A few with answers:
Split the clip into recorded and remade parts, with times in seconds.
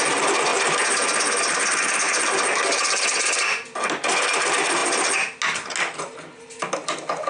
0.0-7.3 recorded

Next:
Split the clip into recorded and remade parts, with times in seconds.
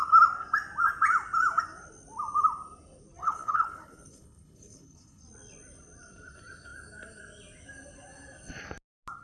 0.0-3.2 recorded; 3.2-5.2 remade; 5.2-9.2 recorded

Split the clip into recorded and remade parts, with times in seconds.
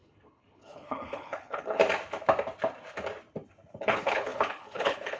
0.0-1.8 remade; 1.8-3.8 recorded; 3.8-5.2 remade